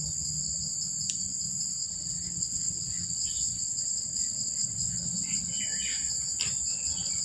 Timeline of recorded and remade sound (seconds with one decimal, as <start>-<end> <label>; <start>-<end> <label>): 0.0-1.8 recorded; 1.8-5.6 remade; 5.6-6.7 recorded; 6.7-7.2 remade